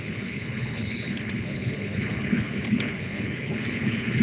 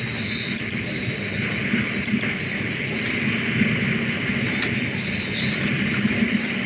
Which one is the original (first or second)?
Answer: second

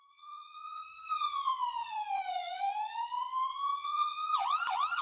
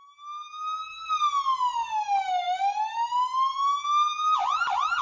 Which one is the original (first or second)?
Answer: second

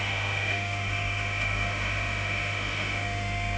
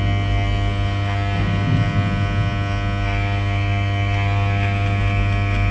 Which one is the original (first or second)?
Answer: second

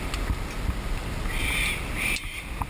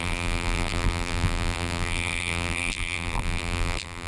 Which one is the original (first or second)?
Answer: first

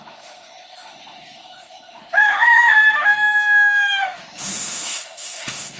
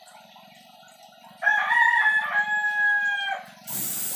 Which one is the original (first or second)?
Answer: second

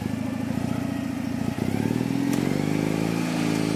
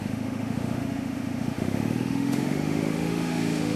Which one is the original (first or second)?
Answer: first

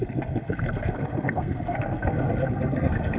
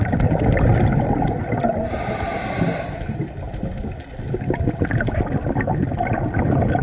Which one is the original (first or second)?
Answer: second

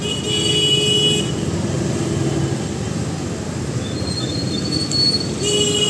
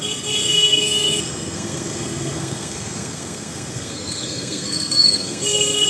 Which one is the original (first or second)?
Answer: first